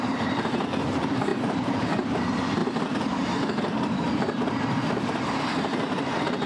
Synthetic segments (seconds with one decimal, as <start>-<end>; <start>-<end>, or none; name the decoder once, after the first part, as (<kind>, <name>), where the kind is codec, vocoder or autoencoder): 0.0-6.5 (vocoder, BigVGAN v2)